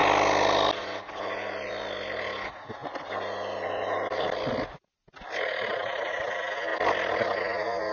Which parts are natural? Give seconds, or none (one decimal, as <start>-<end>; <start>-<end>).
0.0-7.9

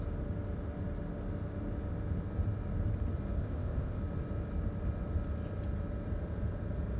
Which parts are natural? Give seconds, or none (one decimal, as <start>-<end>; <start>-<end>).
0.0-3.4; 4.0-7.0

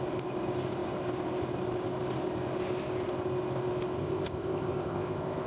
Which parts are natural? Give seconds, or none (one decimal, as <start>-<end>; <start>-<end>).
0.0-4.0

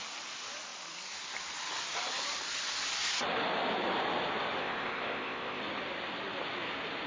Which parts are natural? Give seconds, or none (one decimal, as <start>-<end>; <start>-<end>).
0.0-4.6; 5.6-7.1

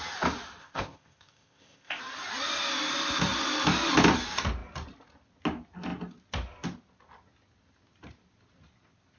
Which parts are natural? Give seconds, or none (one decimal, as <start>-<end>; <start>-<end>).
0.0-0.6; 2.0-9.2